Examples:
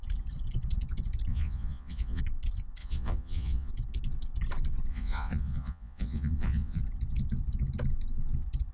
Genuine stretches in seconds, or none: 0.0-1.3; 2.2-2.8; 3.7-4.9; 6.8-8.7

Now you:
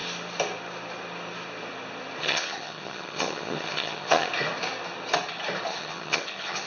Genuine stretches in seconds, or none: 0.0-2.2; 4.3-5.7

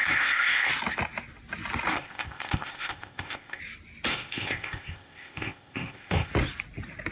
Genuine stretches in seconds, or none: 0.7-1.9; 3.6-4.1; 6.3-7.1

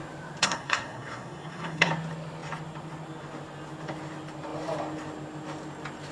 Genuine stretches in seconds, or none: 0.0-0.4; 1.9-6.1

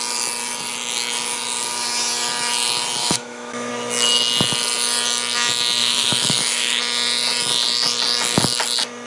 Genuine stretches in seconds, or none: 0.0-3.0; 3.7-5.8; 6.8-9.1